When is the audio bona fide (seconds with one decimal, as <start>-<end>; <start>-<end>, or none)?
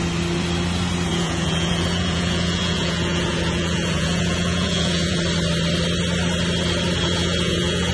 0.0-1.1; 5.2-7.0